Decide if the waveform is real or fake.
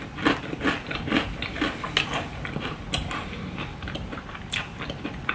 real